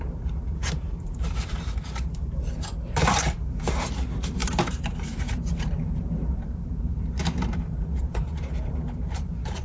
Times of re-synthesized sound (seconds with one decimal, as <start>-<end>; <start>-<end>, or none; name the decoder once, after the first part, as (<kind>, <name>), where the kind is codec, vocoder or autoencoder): 0.0-2.7 (vocoder, BigVGAN v2); 3.3-9.6